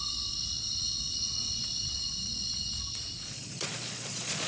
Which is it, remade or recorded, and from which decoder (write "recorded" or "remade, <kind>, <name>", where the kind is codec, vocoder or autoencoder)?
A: remade, vocoder, Vocos